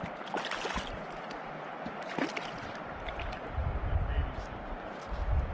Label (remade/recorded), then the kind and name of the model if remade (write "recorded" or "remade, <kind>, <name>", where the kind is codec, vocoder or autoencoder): recorded